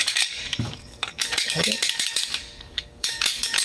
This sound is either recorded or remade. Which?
remade